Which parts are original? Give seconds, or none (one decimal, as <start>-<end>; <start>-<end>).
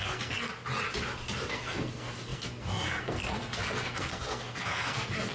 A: 0.5-1.5